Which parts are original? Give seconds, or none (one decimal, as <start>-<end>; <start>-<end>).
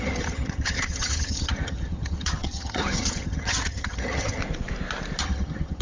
4.4-5.2